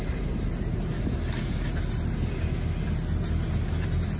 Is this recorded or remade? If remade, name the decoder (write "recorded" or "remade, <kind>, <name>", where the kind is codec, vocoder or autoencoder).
recorded